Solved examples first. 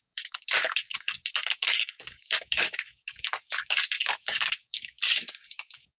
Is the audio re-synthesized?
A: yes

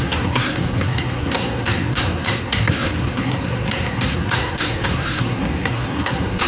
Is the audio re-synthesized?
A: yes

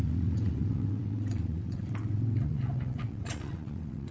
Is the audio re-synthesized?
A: yes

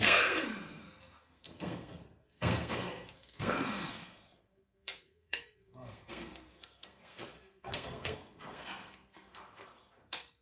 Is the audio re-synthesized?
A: yes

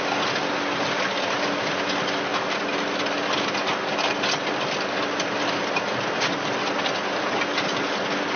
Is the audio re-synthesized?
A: no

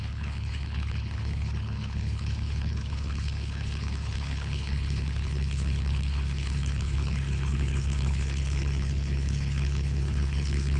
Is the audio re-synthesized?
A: yes